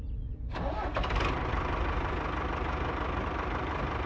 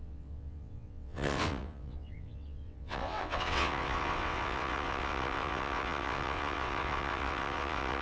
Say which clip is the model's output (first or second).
second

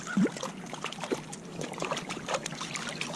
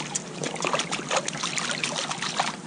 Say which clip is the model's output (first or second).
first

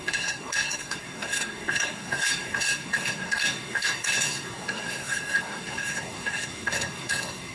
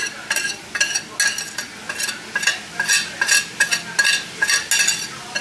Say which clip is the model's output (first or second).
first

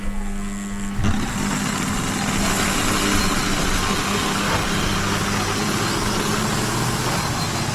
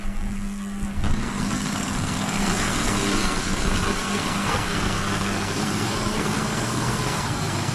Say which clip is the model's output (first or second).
second